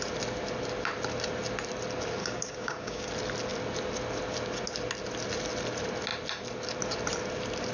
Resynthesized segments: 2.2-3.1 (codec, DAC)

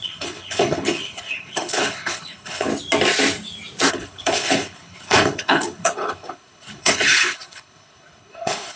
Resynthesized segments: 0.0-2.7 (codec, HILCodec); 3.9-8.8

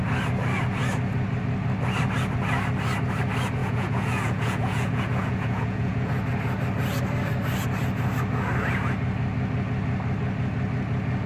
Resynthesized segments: 3.6-6.1 (vocoder, Vocos)

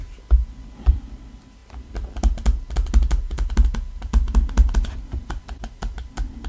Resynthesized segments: 0.9-1.6 (vocoder, BigVGAN v2); 5.2-6.5